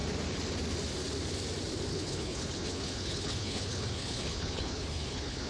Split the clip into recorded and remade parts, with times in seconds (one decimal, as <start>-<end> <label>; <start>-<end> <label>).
0.0-1.9 recorded; 1.9-5.5 remade